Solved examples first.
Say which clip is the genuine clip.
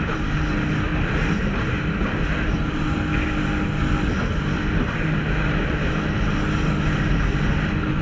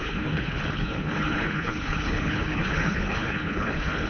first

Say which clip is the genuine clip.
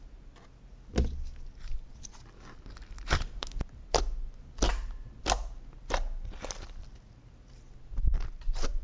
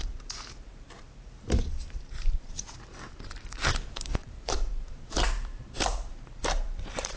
first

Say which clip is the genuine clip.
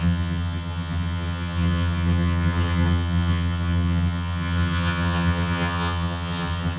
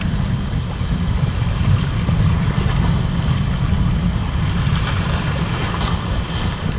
second